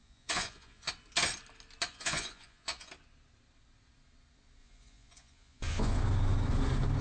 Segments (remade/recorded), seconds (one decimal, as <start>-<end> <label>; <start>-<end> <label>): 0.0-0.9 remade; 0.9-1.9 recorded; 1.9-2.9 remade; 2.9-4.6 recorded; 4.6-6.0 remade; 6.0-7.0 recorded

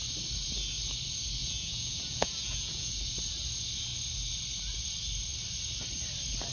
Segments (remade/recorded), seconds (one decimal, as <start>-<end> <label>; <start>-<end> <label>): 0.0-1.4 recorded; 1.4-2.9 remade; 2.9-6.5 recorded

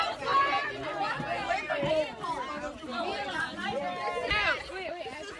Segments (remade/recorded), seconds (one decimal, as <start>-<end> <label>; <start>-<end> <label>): 0.0-2.9 recorded; 2.9-3.8 remade; 3.8-5.4 recorded

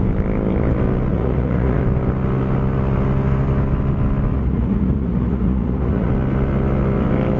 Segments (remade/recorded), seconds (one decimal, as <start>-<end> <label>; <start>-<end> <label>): 0.0-1.1 recorded; 1.1-1.8 remade; 1.8-4.3 recorded; 4.3-6.1 remade; 6.1-7.4 recorded